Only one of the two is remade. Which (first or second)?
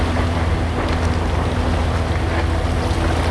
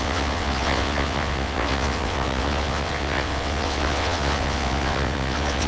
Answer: second